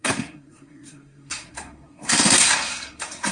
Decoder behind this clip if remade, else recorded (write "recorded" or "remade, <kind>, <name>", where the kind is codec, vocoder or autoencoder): remade, codec, SNAC